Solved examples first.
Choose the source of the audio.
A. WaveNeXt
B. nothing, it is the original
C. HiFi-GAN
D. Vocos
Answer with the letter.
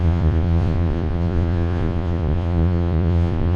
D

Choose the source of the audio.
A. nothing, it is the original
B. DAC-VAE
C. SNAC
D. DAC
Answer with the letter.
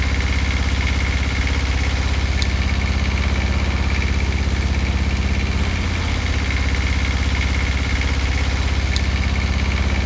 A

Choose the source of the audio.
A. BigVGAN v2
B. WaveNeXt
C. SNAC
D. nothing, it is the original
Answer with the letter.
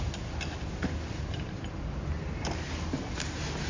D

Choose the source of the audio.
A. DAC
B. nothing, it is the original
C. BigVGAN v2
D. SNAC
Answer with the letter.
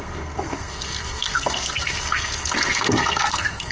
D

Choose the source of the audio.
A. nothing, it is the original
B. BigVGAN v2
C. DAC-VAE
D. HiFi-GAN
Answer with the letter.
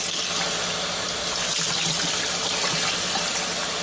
A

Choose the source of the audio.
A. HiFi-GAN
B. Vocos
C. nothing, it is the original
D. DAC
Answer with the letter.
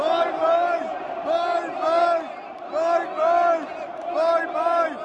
C